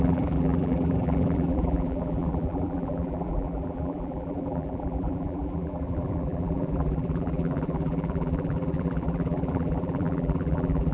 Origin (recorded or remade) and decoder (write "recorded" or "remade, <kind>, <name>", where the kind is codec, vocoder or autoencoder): remade, vocoder, BigVGAN v2